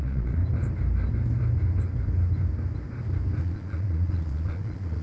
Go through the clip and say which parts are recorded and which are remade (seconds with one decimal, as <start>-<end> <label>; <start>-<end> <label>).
0.0-0.4 remade; 0.4-3.4 recorded; 3.4-5.0 remade